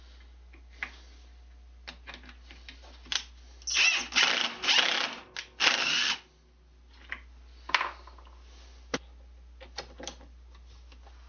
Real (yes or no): yes